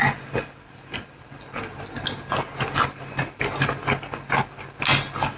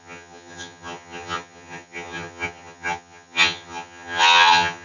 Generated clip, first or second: second